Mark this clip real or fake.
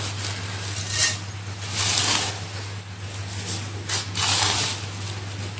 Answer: real